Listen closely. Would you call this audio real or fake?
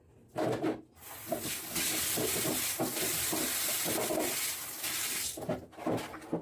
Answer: real